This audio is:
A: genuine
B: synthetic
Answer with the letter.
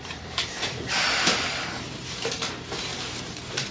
B